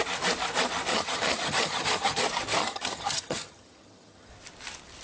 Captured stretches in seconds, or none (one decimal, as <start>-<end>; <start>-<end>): 0.0-0.9; 2.2-2.6; 4.3-5.0